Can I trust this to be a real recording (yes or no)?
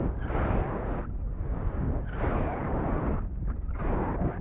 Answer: yes